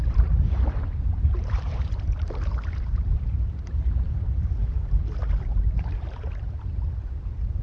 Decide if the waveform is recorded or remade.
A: remade